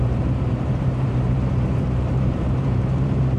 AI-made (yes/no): yes